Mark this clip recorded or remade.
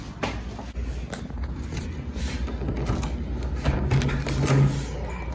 recorded